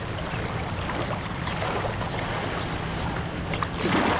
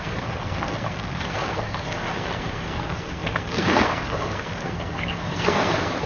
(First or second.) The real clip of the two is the first